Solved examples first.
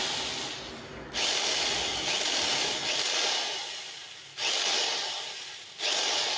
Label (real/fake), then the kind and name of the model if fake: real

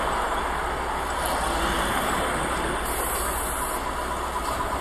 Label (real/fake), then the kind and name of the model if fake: real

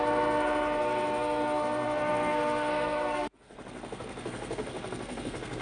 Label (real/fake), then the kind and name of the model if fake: fake, codec, SNAC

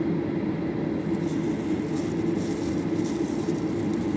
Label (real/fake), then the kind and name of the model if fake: real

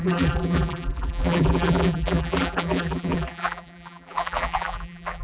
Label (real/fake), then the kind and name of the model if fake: fake, vocoder, BigVGAN v2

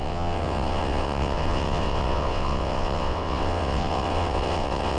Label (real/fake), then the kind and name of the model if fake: fake, vocoder, WaveNeXt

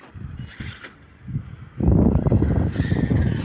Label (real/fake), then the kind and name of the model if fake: real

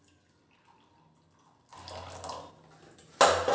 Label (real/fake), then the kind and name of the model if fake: real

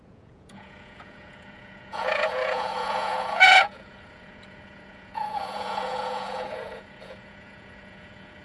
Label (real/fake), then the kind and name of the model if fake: fake, vocoder, Vocos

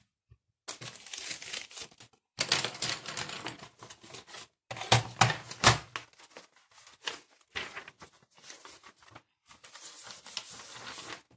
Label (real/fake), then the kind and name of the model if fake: real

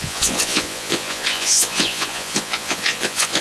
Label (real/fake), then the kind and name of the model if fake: fake, vocoder, Vocos